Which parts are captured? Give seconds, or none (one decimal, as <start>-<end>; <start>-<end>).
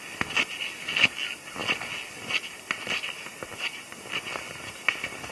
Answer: 0.0-5.3